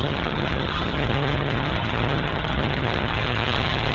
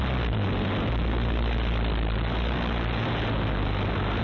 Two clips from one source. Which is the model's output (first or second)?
first